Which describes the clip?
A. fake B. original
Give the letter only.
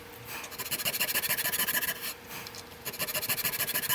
B